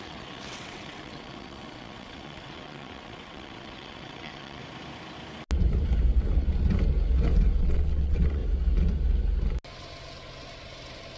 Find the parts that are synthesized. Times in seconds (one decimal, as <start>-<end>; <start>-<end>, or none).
0.0-4.6; 7.6-8.4